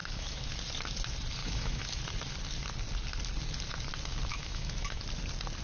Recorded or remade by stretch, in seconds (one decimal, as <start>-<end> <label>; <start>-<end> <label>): 0.0-0.5 remade; 0.5-1.4 recorded; 1.4-2.0 remade; 2.0-4.3 recorded; 4.3-5.0 remade; 5.0-5.6 recorded